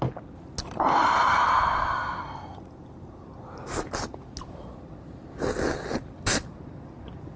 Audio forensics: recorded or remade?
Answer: recorded